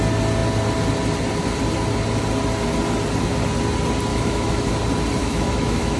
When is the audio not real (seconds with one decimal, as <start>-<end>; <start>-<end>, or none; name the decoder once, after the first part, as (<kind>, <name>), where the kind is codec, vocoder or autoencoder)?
4.1-4.7 (autoencoder, DAC-VAE); 5.2-6.0